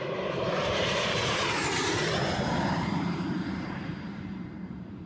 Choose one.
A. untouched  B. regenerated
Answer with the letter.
B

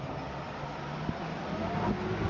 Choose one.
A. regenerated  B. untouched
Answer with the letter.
B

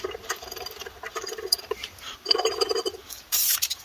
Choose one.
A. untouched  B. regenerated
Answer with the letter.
B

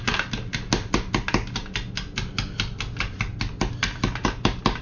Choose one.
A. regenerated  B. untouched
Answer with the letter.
B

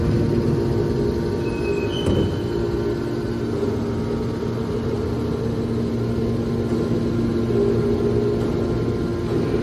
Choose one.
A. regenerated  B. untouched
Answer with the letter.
B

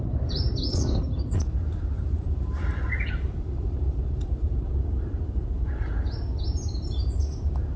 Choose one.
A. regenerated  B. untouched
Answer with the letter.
A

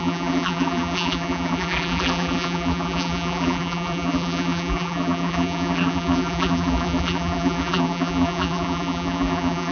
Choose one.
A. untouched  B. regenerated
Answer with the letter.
B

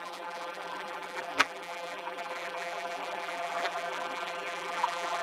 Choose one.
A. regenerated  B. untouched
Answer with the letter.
A